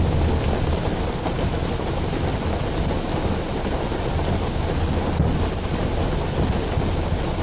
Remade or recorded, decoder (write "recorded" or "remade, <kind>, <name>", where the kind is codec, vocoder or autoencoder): recorded